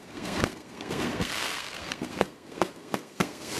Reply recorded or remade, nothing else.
remade